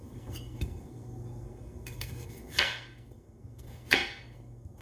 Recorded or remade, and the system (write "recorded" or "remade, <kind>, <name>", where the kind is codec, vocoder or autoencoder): remade, codec, SNAC